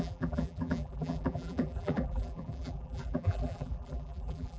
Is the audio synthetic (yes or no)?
yes